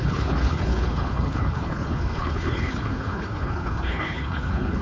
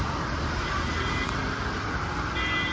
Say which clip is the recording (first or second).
second